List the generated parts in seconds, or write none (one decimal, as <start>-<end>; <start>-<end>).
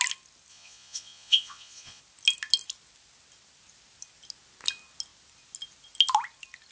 0.5-2.0